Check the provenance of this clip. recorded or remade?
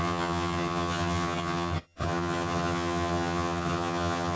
remade